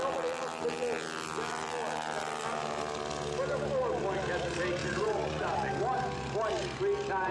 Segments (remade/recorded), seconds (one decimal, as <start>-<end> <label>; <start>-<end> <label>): 0.0-4.8 recorded; 4.8-5.7 remade; 5.7-7.3 recorded